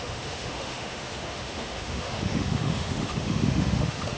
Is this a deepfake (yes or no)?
yes